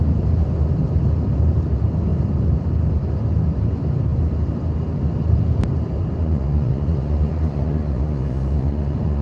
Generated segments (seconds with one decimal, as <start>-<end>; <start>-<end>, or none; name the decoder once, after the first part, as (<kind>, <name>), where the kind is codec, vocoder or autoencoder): 6.2-9.2 (vocoder, Vocos)